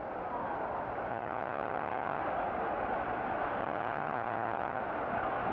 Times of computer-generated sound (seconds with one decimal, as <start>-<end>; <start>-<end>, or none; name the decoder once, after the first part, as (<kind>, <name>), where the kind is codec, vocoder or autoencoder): 1.1-2.2 (vocoder, HiFi-GAN); 3.6-4.8